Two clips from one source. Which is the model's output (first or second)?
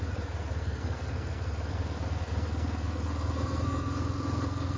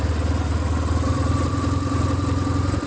first